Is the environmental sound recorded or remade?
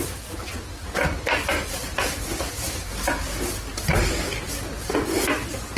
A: recorded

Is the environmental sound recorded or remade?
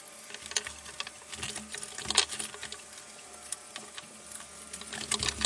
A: recorded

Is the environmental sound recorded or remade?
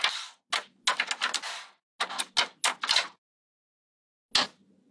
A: recorded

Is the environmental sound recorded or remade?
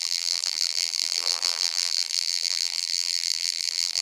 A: remade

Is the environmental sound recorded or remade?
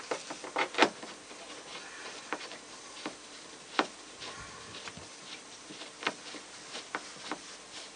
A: recorded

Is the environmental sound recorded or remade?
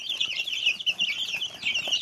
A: remade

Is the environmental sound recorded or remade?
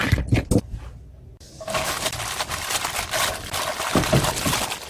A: recorded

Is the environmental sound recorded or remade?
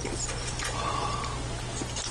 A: recorded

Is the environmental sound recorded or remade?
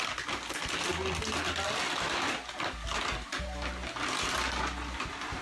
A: recorded